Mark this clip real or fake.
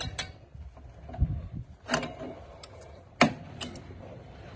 real